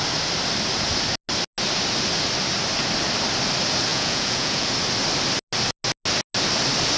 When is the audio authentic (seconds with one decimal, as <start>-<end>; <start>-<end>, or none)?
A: 0.0-3.9; 4.7-7.0